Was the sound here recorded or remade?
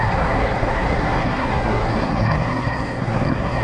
remade